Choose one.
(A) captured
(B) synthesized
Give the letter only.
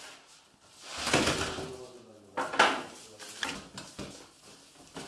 A